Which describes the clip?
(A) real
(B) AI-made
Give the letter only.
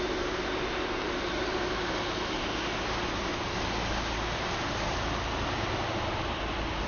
A